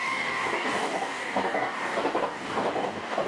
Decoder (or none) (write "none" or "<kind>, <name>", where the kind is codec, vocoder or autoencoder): codec, DAC